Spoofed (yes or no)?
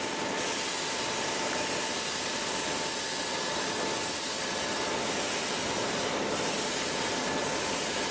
no